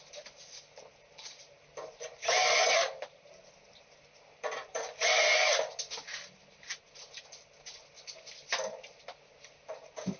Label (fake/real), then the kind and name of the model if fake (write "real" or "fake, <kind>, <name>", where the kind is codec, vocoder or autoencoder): real